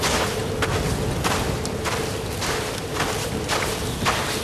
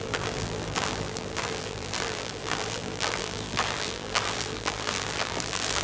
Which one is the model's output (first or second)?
second